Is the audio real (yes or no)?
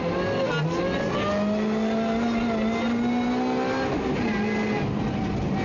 yes